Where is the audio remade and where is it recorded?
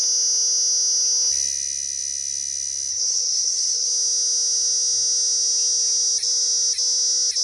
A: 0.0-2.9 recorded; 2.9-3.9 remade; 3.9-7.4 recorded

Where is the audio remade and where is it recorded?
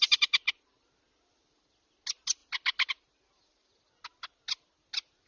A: 0.0-5.3 recorded